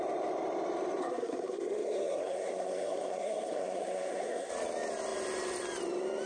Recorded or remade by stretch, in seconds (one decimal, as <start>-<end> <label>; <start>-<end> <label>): 0.0-1.0 recorded; 1.0-4.5 remade; 4.5-6.3 recorded